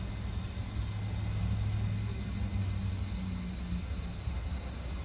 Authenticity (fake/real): real